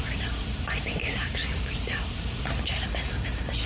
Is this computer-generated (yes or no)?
no